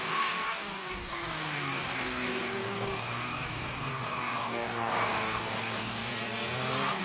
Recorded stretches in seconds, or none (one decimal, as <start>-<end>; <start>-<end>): 6.1-7.0